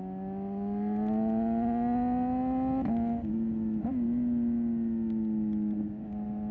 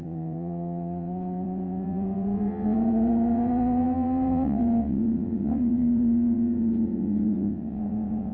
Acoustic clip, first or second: first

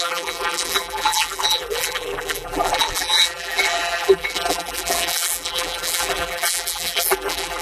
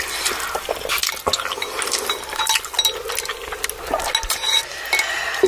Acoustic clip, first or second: second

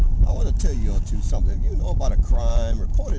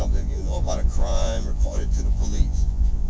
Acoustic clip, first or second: first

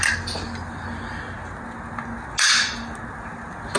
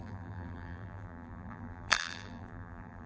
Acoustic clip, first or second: first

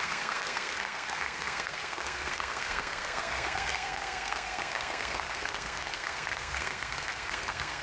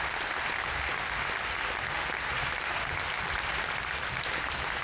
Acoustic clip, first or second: second